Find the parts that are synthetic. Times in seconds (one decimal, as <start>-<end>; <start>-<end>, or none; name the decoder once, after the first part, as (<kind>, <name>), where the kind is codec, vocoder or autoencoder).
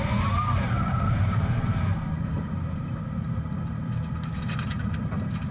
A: 0.0-5.5 (vocoder, BigVGAN v2)